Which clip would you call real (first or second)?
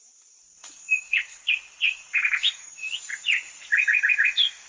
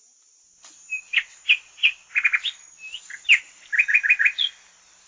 second